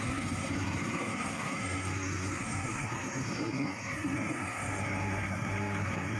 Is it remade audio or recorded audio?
remade